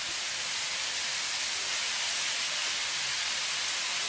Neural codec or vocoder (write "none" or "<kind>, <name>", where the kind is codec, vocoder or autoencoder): none